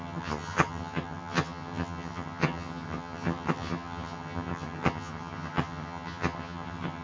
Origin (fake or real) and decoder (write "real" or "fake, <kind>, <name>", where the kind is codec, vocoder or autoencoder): fake, vocoder, HiFi-GAN